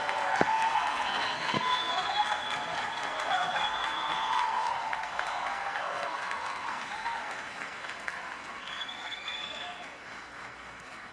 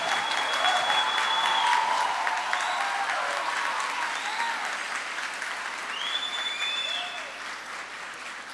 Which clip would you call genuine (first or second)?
second